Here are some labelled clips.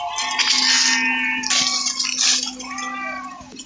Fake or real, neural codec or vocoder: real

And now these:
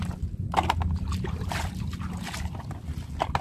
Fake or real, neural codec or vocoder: real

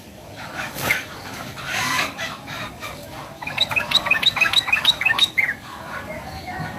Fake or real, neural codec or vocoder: fake, codec, DAC